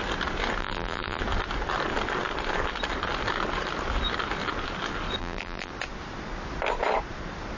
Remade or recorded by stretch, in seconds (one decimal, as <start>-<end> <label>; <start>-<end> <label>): 0.0-0.6 recorded; 0.6-1.2 remade; 1.2-5.2 recorded; 5.2-5.7 remade; 5.7-7.6 recorded